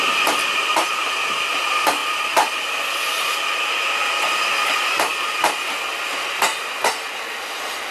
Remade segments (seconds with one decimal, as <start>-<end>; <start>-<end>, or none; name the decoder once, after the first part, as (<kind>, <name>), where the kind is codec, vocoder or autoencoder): none